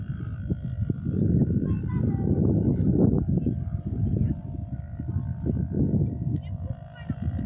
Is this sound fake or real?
real